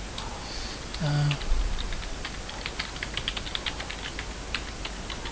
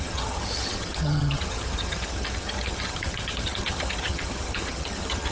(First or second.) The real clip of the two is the first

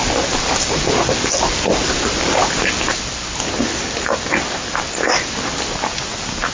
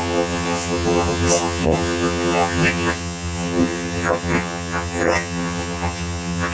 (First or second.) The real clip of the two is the first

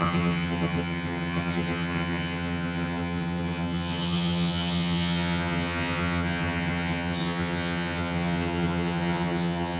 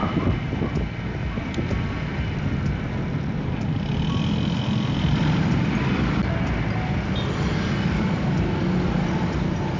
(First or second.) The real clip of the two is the second